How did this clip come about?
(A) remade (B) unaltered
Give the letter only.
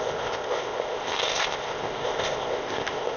A